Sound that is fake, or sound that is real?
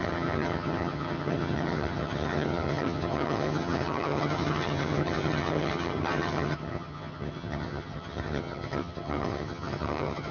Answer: fake